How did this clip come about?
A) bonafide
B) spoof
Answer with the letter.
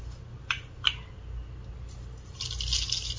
A